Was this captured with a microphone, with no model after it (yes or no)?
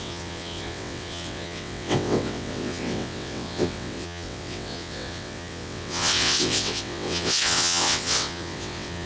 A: no